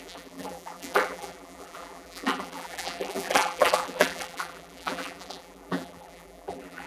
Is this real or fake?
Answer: fake